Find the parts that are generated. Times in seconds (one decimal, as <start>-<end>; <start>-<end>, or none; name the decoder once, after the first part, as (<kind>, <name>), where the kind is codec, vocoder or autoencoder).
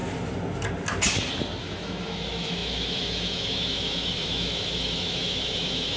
1.6-6.0 (autoencoder, DAC-VAE)